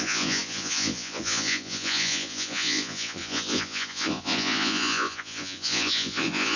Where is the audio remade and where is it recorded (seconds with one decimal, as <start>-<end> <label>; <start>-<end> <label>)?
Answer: 0.0-6.6 remade